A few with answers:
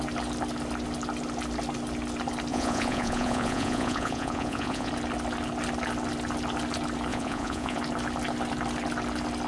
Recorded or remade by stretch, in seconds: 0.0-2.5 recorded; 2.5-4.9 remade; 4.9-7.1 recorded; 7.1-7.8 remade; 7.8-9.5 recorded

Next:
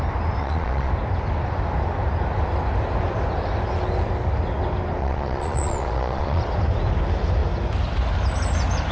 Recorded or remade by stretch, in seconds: 0.0-0.4 recorded; 0.4-0.9 remade; 0.9-5.0 recorded; 5.0-6.4 remade; 6.4-8.9 recorded

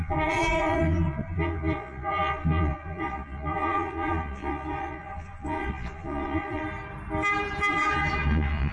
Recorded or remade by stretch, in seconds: 0.0-6.6 remade; 6.6-7.7 recorded; 7.7-8.7 remade

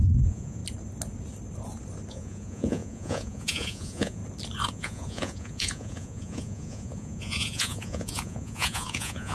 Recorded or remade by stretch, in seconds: 0.0-0.6 remade; 0.6-2.1 recorded; 2.1-4.2 remade; 4.2-4.7 recorded; 4.7-9.3 remade